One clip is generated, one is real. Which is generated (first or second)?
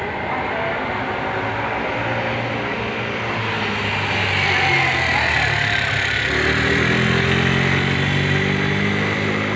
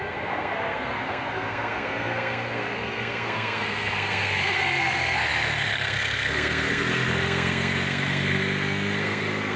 second